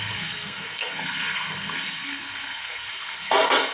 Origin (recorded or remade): remade